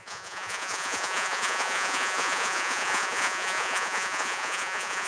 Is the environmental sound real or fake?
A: fake